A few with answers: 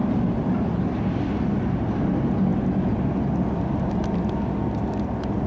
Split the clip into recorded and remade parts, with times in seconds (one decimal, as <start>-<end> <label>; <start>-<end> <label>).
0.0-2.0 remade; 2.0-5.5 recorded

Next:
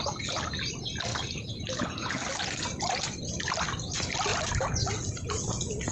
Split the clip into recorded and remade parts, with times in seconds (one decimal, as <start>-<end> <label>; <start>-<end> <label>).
0.0-5.9 recorded

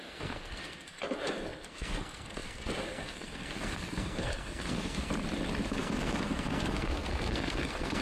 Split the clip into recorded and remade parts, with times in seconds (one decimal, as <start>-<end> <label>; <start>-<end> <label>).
0.0-5.1 remade; 5.1-5.7 recorded; 5.7-8.0 remade

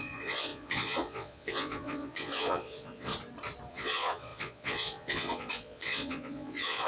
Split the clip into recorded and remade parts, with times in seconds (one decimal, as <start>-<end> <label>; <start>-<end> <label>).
0.0-3.1 remade; 3.1-3.7 recorded; 3.7-6.9 remade

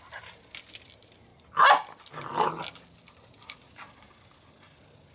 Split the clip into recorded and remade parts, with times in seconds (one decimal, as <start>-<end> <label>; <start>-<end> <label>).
0.0-5.1 recorded